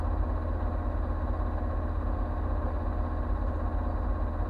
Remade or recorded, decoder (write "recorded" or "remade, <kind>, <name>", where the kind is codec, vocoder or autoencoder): recorded